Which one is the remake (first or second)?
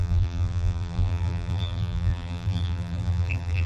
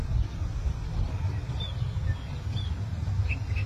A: first